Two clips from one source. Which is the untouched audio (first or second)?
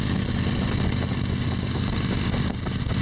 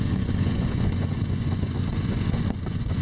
first